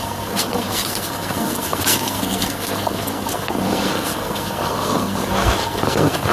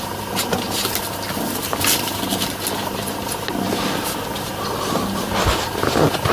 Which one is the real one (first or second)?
second